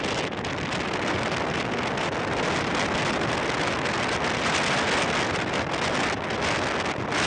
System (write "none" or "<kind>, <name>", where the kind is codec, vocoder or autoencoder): none